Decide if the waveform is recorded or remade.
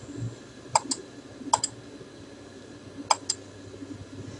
recorded